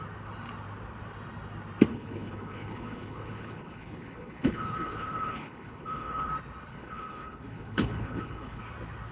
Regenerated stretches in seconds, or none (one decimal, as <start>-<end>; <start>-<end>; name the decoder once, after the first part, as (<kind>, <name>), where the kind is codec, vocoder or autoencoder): 1.9-6.3 (codec, HILCodec); 6.7-8.6